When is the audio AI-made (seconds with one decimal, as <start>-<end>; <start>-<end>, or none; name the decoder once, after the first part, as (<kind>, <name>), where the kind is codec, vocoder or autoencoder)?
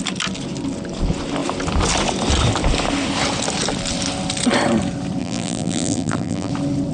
5.2-6.5 (vocoder, BigVGAN v2)